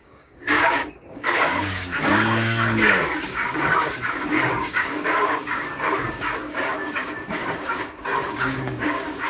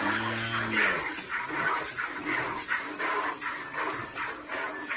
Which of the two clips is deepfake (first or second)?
first